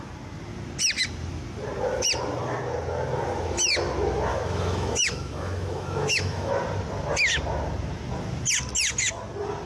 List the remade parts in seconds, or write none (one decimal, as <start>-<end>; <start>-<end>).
4.3-6.5

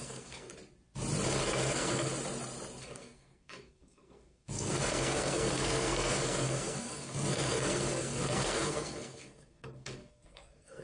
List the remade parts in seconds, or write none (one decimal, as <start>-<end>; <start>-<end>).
0.0-0.5; 1.4-2.1; 2.8-10.8

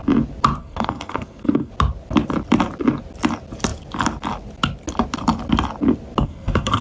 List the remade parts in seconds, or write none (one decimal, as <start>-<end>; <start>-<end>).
0.6-1.7; 6.2-6.8

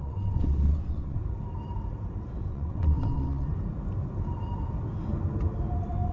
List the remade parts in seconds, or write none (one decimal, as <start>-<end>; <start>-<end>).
0.0-1.2; 2.5-3.5

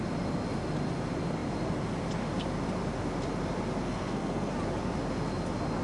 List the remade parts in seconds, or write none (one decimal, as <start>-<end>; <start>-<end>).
3.8-4.5